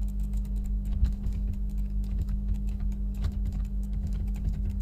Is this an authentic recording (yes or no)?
no